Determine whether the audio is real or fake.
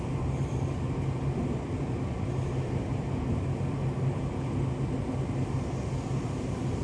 real